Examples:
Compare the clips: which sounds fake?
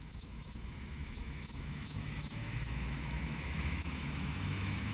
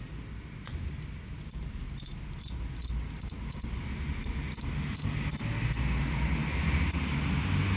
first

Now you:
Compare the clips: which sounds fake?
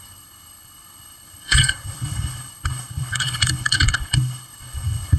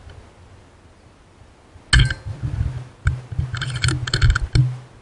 first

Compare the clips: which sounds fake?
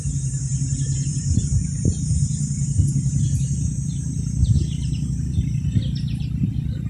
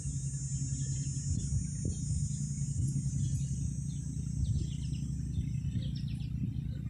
first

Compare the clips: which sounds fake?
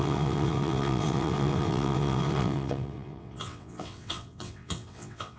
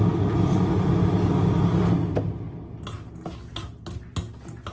first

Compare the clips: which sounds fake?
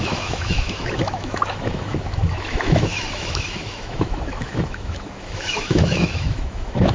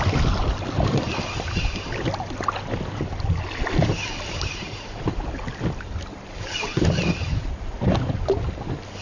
first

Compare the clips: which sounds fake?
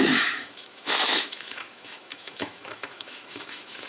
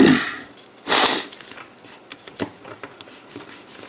first